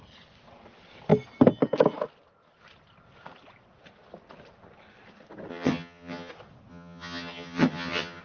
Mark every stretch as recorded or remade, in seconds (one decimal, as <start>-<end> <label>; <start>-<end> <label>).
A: 0.0-5.5 recorded; 5.5-6.3 remade; 6.3-6.7 recorded; 6.7-8.2 remade